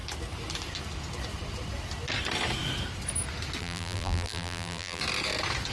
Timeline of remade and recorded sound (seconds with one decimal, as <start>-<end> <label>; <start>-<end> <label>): 0.0-3.6 recorded; 3.6-5.0 remade; 5.0-5.7 recorded